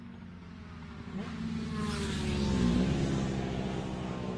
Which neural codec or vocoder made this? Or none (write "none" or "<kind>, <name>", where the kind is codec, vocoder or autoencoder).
none